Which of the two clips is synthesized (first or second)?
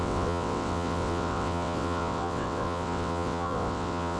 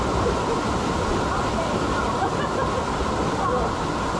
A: first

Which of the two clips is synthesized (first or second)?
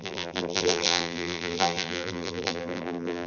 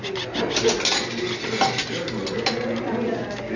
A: first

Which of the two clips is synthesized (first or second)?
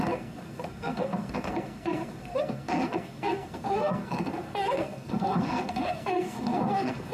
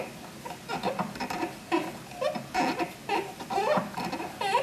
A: first